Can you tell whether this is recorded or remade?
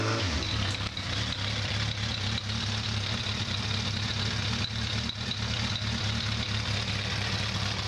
recorded